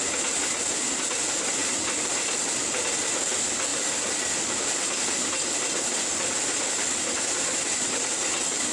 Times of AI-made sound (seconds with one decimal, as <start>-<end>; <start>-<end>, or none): none